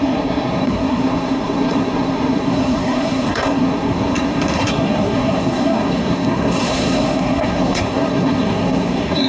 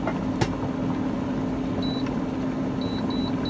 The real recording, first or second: second